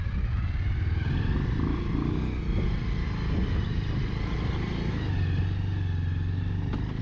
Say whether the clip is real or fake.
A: real